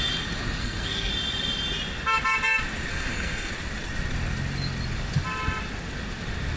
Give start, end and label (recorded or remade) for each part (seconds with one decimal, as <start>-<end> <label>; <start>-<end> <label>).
0.0-0.6 recorded; 0.6-1.1 remade; 1.1-2.9 recorded; 2.9-3.5 remade; 3.5-6.6 recorded